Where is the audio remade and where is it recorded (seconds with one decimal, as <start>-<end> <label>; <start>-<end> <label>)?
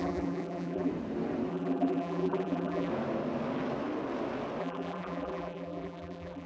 0.0-0.9 remade; 0.9-1.5 recorded; 1.5-2.9 remade; 2.9-4.6 recorded; 4.6-6.5 remade